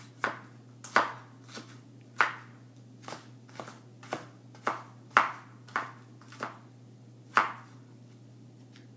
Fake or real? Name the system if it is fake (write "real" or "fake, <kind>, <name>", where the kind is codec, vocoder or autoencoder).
real